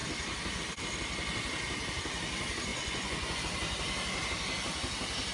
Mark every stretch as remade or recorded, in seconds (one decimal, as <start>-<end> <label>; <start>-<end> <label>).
0.0-2.7 recorded; 2.7-3.4 remade; 3.4-5.3 recorded